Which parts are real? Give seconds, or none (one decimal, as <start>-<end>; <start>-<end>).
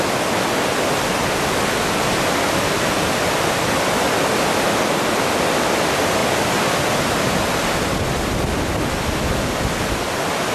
0.0-10.5